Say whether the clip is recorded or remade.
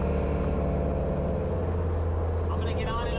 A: recorded